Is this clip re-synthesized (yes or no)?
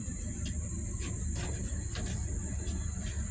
no